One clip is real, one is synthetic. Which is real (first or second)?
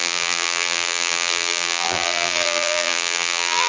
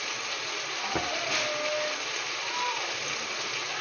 second